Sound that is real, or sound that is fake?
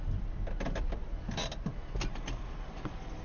real